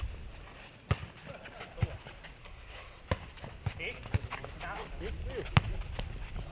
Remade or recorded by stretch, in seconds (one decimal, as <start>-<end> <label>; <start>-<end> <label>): 0.0-2.4 recorded; 2.4-3.0 remade; 3.0-6.5 recorded